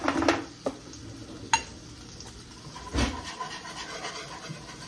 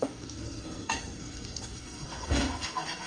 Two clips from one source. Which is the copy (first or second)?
second